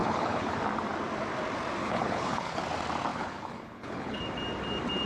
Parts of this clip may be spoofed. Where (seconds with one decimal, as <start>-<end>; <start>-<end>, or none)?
0.0-0.5; 1.8-2.6; 3.1-4.2